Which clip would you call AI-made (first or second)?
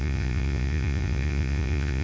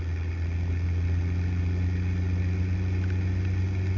first